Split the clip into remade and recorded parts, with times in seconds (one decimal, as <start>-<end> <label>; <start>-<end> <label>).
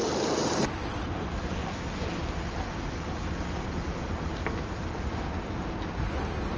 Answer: 0.0-6.6 recorded